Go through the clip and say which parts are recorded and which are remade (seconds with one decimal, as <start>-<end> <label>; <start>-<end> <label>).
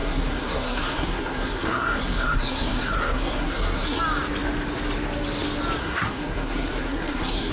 0.0-4.0 remade; 4.0-5.8 recorded; 5.8-7.5 remade